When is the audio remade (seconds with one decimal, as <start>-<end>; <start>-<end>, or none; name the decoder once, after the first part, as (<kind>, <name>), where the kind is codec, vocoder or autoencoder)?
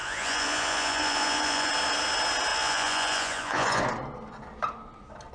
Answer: 0.0-1.7 (vocoder, Vocos); 2.5-3.8